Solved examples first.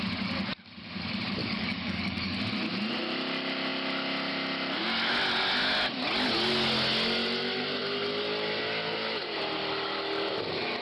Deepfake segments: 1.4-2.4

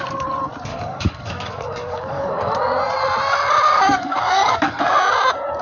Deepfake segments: 0.7-2.5; 3.7-4.8

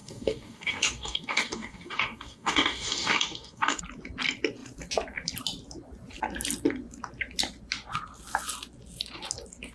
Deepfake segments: 0.0-3.8

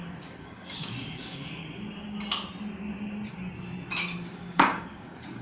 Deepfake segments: 0.0-1.6; 4.3-5.4

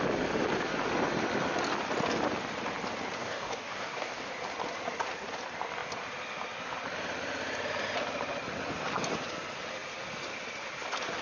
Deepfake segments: 3.2-4.3